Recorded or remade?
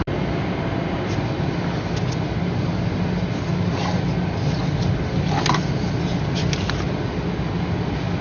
recorded